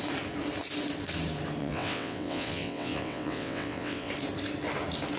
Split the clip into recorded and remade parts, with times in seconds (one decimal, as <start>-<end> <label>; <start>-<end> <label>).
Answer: 0.0-1.6 recorded; 1.6-4.1 remade; 4.1-5.2 recorded